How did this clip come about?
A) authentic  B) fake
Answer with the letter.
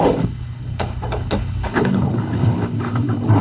B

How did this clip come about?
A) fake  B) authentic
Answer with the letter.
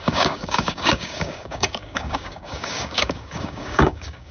A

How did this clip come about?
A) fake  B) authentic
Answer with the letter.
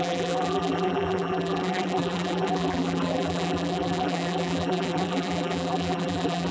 A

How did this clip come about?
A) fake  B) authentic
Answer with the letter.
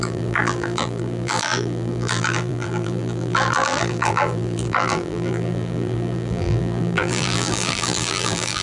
A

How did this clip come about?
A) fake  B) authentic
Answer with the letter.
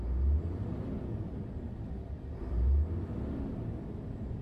B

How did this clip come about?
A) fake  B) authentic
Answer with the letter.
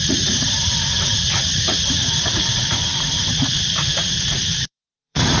A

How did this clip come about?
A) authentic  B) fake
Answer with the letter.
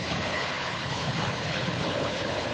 B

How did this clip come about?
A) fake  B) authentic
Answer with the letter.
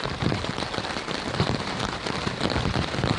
A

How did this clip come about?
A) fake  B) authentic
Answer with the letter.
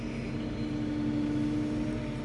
B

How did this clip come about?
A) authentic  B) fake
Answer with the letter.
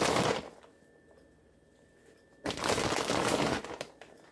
A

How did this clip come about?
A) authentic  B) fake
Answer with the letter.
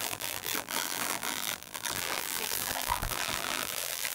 B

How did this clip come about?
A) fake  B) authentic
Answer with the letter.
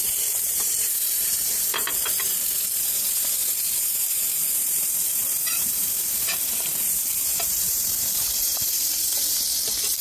A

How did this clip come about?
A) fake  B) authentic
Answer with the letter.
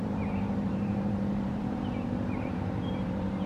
A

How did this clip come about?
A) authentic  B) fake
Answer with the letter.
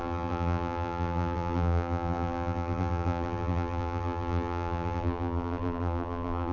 B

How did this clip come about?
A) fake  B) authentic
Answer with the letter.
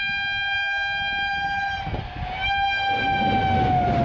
B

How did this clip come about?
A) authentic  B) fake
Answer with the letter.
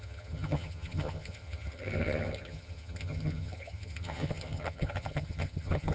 B